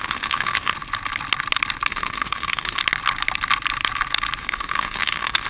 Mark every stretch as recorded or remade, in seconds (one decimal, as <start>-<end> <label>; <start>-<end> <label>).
0.0-0.7 remade; 0.7-1.9 recorded; 1.9-2.8 remade; 2.8-4.4 recorded; 4.4-5.5 remade